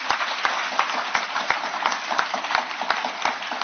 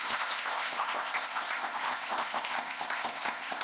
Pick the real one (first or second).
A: first